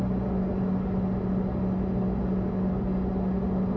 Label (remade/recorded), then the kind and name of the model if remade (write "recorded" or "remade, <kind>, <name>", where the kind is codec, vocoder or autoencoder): recorded